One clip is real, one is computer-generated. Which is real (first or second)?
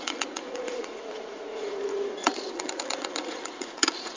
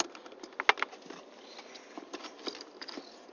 second